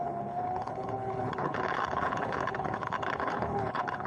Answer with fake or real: fake